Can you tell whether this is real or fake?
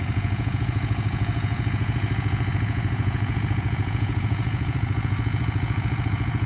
fake